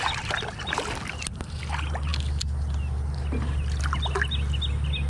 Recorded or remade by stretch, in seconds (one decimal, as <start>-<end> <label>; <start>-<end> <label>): 0.0-5.1 recorded